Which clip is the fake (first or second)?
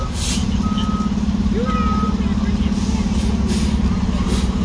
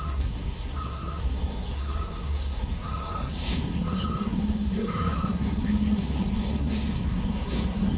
second